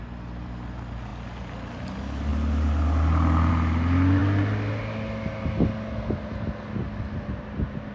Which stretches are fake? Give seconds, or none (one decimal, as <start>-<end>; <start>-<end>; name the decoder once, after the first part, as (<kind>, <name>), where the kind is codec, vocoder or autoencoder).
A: none